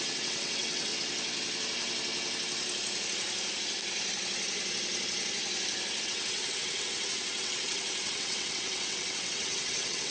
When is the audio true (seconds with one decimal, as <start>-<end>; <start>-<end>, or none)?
0.9-6.0